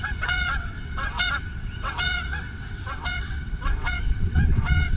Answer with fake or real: fake